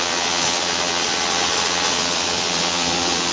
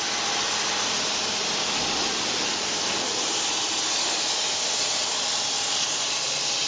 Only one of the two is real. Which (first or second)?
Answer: second